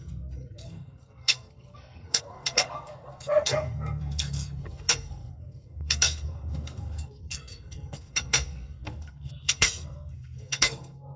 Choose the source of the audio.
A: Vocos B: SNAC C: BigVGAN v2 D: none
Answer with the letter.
B